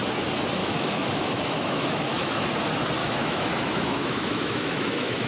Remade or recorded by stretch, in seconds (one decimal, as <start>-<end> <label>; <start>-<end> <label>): 0.0-0.6 recorded; 0.6-2.5 remade; 2.5-3.0 recorded; 3.0-5.3 remade